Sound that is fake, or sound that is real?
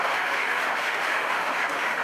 fake